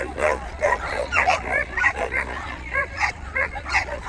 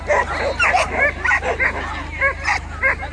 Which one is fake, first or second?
first